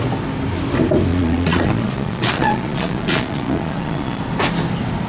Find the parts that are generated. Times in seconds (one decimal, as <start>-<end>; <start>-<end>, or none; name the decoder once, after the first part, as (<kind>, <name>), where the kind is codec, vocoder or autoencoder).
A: 1.1-4.2 (vocoder, Vocos)